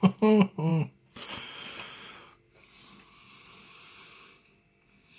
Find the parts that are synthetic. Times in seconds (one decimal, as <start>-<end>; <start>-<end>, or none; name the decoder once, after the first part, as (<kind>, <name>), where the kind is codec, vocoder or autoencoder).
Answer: none